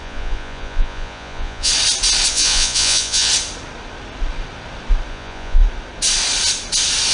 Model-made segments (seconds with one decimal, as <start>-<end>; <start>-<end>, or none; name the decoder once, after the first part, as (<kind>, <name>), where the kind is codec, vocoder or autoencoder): 0.0-1.7 (vocoder, Vocos); 2.3-3.3; 5.1-5.6